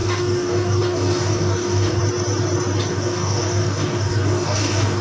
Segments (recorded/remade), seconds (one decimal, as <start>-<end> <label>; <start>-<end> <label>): 0.0-2.0 remade; 2.0-2.9 recorded; 2.9-5.0 remade